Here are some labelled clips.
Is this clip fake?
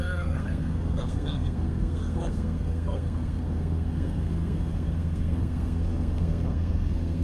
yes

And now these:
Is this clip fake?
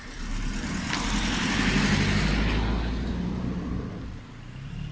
no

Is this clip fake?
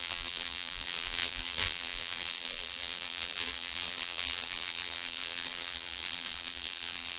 yes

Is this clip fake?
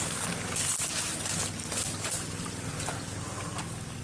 no